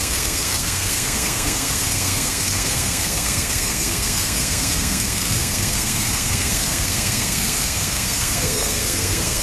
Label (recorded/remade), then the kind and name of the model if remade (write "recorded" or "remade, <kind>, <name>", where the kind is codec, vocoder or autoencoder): remade, codec, SNAC